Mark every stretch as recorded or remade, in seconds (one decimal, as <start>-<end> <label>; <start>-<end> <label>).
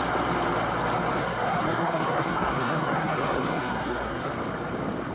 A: 0.0-1.2 recorded; 1.2-4.3 remade; 4.3-5.1 recorded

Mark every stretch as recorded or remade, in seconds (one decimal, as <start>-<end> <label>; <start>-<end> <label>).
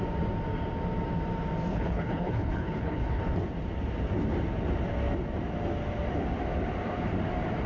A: 0.0-1.7 recorded; 1.7-3.2 remade; 3.2-7.7 recorded